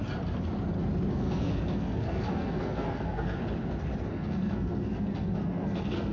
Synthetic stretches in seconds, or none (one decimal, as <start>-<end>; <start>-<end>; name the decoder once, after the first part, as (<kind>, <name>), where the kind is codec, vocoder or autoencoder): 1.1-3.4 (codec, SNAC); 4.1-6.1